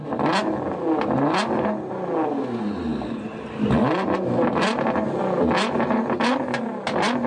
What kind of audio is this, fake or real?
real